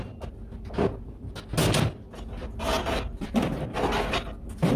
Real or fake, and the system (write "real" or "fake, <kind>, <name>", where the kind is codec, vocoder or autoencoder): real